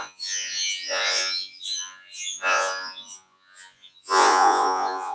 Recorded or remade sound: remade